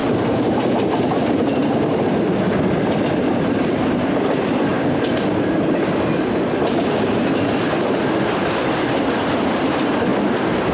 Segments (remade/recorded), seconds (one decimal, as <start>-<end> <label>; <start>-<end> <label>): 0.0-4.7 remade; 4.7-8.4 recorded; 8.4-10.7 remade